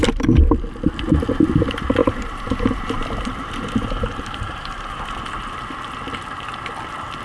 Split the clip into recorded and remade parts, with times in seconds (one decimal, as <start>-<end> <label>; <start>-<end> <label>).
0.0-0.7 remade; 0.7-2.0 recorded; 2.0-5.0 remade; 5.0-7.2 recorded